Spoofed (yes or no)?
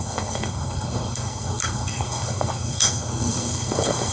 yes